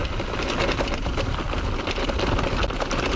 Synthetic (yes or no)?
no